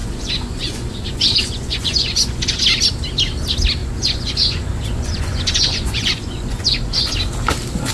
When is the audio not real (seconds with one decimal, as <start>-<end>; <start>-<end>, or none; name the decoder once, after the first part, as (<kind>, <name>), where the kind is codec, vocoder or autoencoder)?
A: 0.0-2.6 (vocoder, Vocos); 3.8-7.1